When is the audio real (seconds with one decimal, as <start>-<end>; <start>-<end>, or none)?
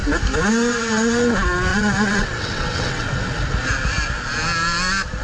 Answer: 0.0-1.7; 3.1-5.2